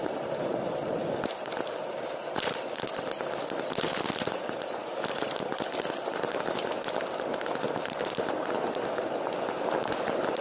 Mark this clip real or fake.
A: real